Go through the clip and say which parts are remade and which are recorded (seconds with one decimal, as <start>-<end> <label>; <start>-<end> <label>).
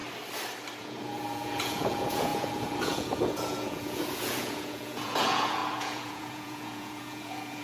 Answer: 0.0-0.8 recorded; 0.8-7.6 remade